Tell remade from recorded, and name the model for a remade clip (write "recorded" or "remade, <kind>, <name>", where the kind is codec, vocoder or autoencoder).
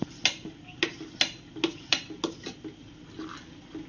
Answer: recorded